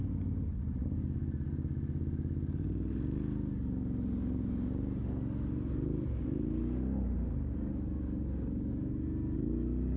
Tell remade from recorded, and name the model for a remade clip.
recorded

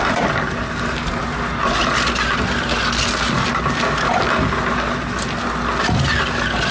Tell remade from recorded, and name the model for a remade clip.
recorded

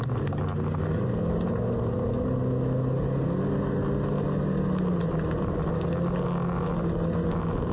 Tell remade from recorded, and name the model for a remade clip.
recorded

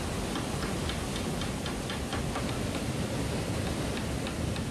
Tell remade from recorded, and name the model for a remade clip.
recorded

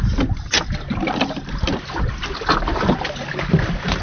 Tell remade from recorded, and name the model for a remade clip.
recorded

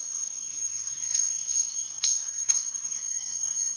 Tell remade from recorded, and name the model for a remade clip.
remade, codec, SNAC